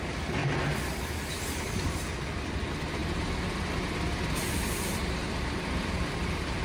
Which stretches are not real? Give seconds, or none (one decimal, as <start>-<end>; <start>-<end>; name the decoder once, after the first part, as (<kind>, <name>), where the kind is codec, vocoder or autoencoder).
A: 0.4-0.9 (vocoder, BigVGAN v2); 5.2-6.6